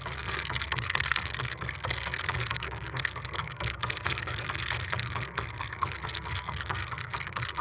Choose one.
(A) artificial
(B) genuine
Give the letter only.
A